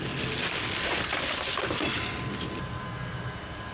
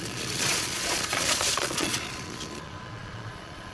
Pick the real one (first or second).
first